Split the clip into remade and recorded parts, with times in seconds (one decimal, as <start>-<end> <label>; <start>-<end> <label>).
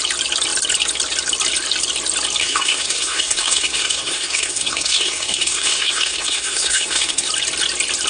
0.0-2.4 recorded; 2.4-7.3 remade; 7.3-8.1 recorded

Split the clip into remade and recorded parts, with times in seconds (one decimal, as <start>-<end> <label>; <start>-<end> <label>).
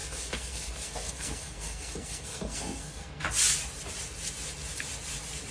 0.0-3.3 remade; 3.3-5.5 recorded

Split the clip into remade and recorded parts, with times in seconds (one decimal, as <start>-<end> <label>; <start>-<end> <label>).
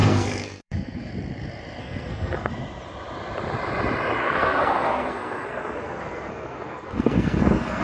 0.0-1.1 remade; 1.1-1.8 recorded; 1.8-2.5 remade; 2.5-4.2 recorded; 4.2-7.8 remade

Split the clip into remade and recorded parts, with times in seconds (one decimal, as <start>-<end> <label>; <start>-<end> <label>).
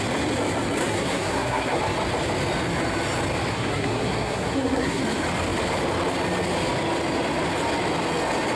0.0-0.8 recorded; 0.8-1.8 remade; 1.8-3.5 recorded; 3.5-5.0 remade; 5.0-8.6 recorded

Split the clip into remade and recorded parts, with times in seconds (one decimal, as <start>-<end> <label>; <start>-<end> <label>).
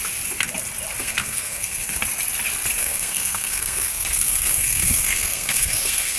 0.0-1.0 recorded; 1.0-2.0 remade; 2.0-2.8 recorded; 2.8-6.2 remade